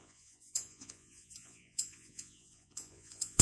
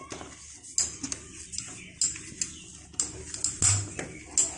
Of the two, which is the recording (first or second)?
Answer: second